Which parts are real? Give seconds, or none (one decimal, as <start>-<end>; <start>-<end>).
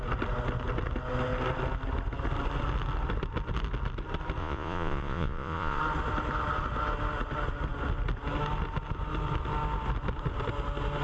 0.0-4.4; 5.8-11.0